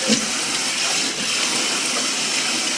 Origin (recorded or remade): recorded